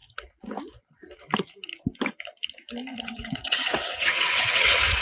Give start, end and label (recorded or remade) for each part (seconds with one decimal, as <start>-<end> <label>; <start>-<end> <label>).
0.0-3.0 recorded; 3.0-5.0 remade